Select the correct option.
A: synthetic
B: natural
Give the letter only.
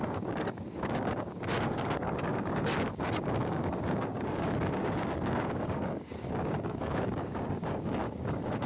A